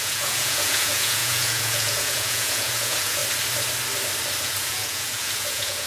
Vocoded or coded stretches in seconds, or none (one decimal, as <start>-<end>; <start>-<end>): 0.0-3.2; 4.4-5.9